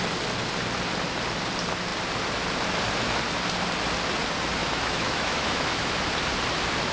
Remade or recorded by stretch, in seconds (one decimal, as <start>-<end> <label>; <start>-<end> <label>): 0.0-4.6 recorded; 4.6-5.9 remade; 5.9-6.9 recorded